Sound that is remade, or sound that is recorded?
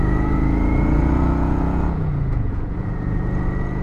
remade